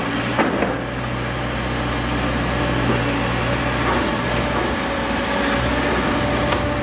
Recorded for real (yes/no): yes